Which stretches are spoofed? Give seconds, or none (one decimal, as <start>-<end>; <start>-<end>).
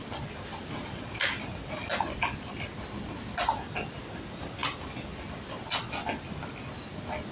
none